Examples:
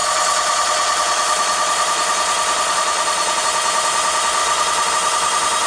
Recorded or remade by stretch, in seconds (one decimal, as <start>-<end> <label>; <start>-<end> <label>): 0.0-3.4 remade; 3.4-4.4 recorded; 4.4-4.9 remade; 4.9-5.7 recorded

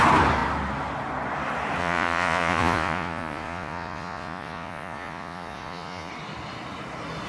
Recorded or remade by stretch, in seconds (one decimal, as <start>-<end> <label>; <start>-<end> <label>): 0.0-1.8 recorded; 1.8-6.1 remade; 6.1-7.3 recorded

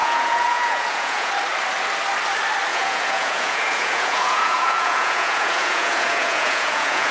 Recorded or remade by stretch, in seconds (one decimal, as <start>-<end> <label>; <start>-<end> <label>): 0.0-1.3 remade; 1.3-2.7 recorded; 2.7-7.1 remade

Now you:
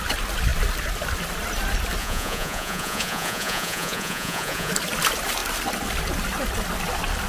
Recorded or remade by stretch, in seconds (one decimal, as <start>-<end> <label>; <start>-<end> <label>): 0.0-2.0 recorded; 2.0-4.7 remade; 4.7-7.3 recorded

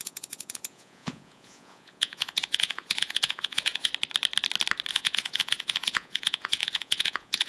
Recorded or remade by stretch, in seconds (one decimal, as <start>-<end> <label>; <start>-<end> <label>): 0.0-3.9 remade; 3.9-4.9 recorded; 4.9-7.5 remade

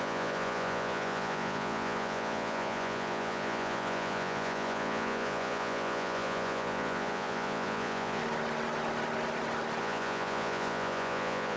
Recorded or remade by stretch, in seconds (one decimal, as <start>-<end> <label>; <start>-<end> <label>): 0.0-8.2 remade; 8.2-9.8 recorded; 9.8-11.6 remade